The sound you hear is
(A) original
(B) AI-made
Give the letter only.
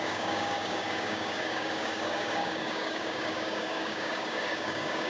B